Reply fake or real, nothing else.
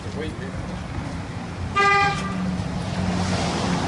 real